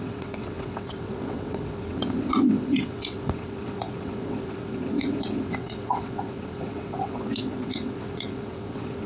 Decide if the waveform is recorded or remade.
remade